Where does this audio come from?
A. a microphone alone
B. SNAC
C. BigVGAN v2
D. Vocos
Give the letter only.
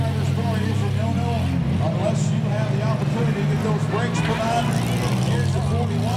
A